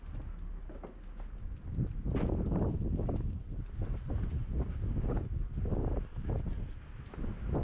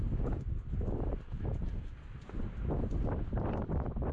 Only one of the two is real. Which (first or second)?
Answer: first